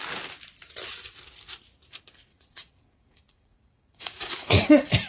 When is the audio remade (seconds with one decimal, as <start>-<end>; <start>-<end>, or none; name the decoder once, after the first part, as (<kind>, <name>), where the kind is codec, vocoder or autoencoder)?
2.3-5.1 (vocoder, Vocos)